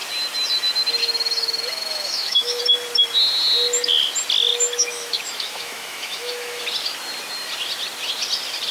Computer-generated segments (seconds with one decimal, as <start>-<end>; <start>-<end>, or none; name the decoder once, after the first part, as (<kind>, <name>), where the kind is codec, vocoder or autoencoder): 1.0-2.6 (autoencoder, DAC-VAE); 4.5-6.6